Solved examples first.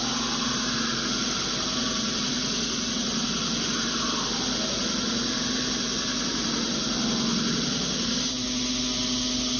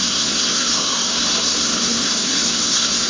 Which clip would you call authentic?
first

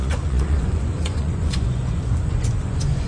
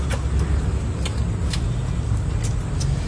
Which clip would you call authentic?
second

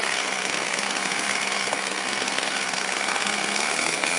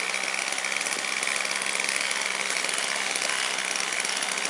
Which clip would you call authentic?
second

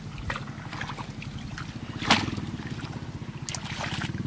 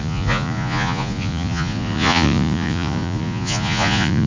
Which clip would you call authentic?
first